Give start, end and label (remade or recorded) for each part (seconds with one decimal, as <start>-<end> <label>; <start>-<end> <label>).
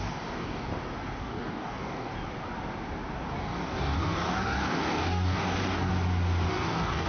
0.0-0.7 remade; 0.7-1.2 recorded; 1.2-2.1 remade; 2.1-3.4 recorded; 3.4-5.9 remade; 5.9-6.5 recorded; 6.5-7.1 remade